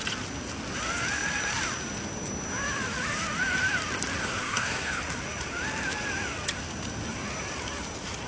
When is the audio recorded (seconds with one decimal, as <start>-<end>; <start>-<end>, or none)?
0.0-4.2; 5.0-8.3